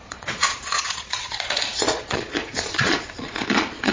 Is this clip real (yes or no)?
no